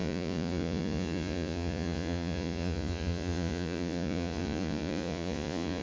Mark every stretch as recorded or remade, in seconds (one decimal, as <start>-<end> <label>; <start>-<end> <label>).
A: 0.0-5.8 remade